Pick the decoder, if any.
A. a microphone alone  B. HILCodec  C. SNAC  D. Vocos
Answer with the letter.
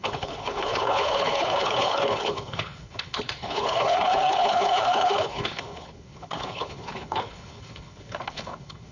B